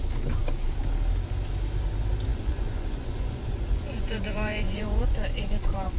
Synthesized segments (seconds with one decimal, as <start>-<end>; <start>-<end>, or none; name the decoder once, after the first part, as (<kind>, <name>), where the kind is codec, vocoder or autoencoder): 2.3-6.0 (vocoder, Vocos)